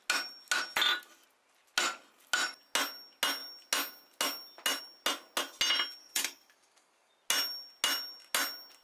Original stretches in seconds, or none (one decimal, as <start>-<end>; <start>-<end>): 0.0-6.0; 7.1-8.8